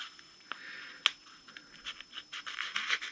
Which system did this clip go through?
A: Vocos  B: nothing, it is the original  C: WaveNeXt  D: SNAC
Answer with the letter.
B